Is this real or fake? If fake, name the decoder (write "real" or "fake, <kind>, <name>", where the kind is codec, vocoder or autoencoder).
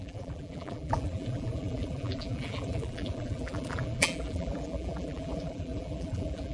fake, vocoder, BigVGAN v2